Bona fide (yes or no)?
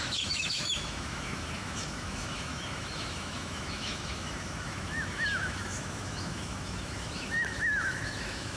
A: no